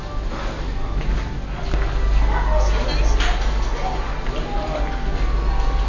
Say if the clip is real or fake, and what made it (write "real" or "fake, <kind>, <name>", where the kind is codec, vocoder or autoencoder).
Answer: real